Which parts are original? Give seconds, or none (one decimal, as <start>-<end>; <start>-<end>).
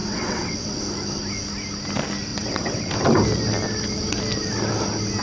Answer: 0.8-2.3; 2.9-5.2